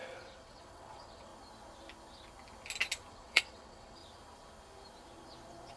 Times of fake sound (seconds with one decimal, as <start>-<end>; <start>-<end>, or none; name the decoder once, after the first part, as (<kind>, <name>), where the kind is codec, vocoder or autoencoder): 0.0-1.3 (vocoder, WaveNeXt); 3.1-4.0